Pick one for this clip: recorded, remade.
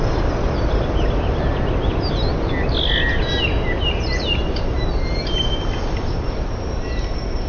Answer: recorded